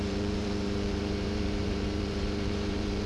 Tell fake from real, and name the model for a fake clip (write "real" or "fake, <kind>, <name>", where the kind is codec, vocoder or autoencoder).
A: fake, vocoder, BigVGAN v2